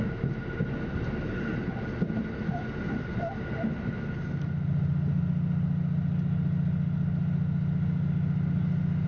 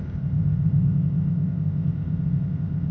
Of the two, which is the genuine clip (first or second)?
first